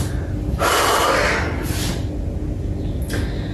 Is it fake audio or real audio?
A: real